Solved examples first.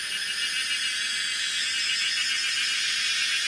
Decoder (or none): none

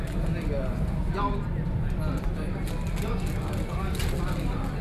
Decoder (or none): none